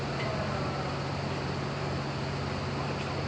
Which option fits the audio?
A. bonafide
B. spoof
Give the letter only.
A